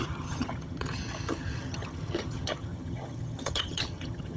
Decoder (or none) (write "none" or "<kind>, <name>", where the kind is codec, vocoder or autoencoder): vocoder, HiFi-GAN